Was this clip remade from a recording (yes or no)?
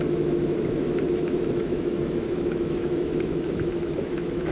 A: yes